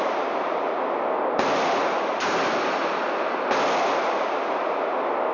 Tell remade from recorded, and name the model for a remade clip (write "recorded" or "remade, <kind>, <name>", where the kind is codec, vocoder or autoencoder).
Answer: recorded